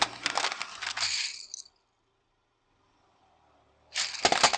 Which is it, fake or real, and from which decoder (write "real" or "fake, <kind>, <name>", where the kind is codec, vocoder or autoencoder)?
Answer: real